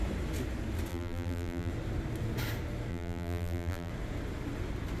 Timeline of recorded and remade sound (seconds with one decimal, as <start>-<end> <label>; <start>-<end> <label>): 0.0-0.9 recorded; 0.9-1.7 remade; 1.7-2.9 recorded; 2.9-3.9 remade; 3.9-5.0 recorded